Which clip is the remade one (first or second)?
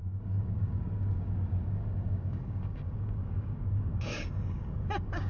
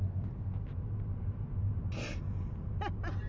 first